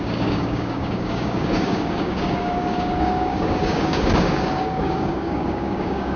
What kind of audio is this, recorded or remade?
remade